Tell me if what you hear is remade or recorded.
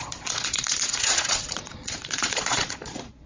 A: remade